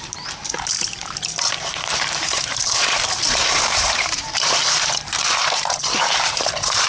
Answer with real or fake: fake